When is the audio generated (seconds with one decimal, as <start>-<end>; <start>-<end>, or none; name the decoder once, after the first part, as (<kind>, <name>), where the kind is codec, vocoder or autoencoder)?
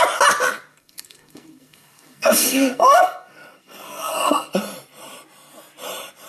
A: 0.7-4.5 (codec, SNAC)